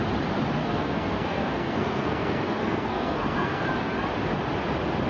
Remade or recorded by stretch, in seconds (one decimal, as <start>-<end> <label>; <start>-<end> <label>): 0.0-0.6 recorded; 0.6-3.7 remade; 3.7-5.1 recorded